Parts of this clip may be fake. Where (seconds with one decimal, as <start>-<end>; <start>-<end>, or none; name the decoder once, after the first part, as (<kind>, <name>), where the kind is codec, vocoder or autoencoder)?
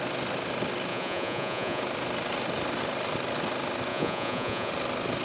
0.9-1.8 (vocoder, Vocos); 3.9-4.7